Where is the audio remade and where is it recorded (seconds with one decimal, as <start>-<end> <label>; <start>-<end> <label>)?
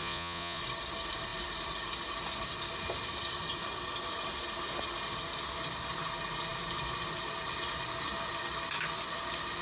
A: 0.0-0.6 remade; 0.6-9.6 recorded